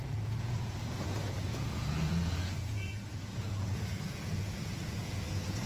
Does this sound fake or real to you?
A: fake